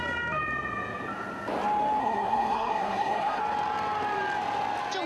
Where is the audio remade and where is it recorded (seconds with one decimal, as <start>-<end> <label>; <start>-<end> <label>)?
0.0-2.0 recorded; 2.0-3.4 remade; 3.4-5.1 recorded